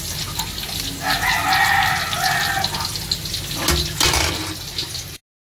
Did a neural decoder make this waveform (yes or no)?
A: no